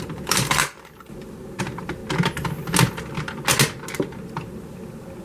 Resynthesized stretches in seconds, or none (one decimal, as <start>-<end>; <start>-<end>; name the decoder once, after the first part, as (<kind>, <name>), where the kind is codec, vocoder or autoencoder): 0.0-0.6 (vocoder, BigVGAN v2); 1.6-2.0

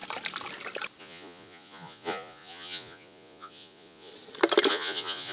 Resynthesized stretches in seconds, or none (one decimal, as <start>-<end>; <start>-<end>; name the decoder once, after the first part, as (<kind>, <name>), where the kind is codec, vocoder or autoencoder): 1.0-4.1 (vocoder, Vocos); 4.7-5.3